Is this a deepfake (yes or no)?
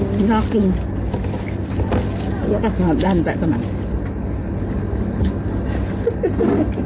no